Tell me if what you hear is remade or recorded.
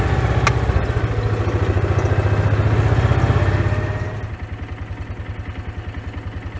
recorded